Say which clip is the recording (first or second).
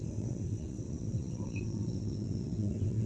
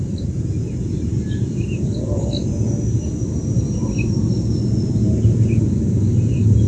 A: second